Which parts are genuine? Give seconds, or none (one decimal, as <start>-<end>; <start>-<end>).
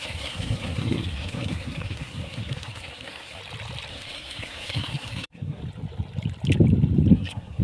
3.4-3.9; 5.6-7.1